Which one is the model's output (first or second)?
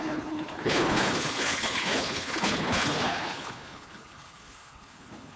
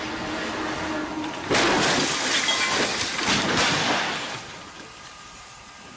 first